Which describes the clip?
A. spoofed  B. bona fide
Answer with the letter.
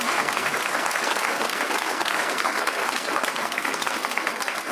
A